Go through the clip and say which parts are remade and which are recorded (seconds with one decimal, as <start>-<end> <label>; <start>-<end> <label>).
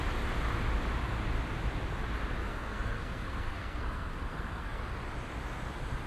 0.0-2.4 recorded; 2.4-4.8 remade; 4.8-6.1 recorded